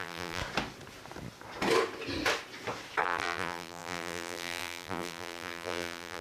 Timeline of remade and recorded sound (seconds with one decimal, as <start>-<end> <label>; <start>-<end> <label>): 0.0-0.4 remade; 0.4-3.0 recorded; 3.0-6.2 remade